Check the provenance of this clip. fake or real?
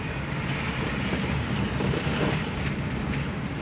real